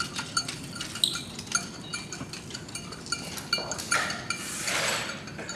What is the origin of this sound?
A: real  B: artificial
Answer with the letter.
A